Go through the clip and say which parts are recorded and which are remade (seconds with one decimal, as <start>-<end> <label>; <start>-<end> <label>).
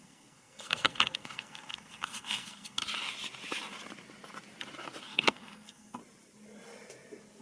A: 0.0-2.8 remade; 2.8-5.0 recorded; 5.0-6.0 remade; 6.0-7.4 recorded